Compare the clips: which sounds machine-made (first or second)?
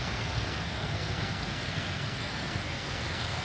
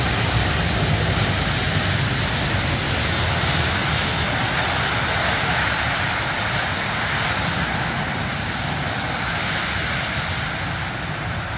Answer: first